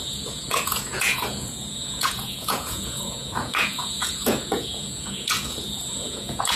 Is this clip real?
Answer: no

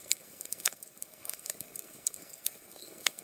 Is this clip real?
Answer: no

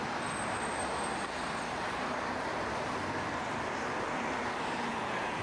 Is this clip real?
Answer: yes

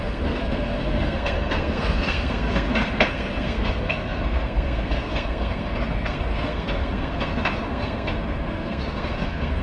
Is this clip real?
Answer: no